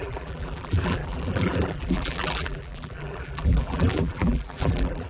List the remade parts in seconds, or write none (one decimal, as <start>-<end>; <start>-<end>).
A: 0.0-5.1